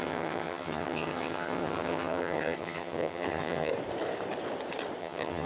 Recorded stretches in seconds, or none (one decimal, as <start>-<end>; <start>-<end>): 3.7-5.0